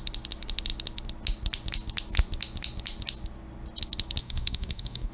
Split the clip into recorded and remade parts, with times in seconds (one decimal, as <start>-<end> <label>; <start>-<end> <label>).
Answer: 0.0-4.2 recorded; 4.2-5.1 remade